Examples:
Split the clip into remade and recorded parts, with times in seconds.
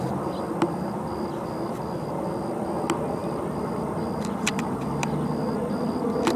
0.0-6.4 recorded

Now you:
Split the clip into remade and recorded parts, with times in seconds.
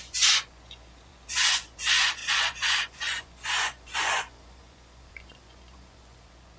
0.0-6.6 remade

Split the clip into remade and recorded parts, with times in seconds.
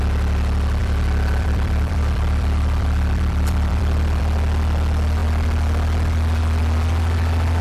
0.0-0.8 recorded; 0.8-4.2 remade; 4.2-7.6 recorded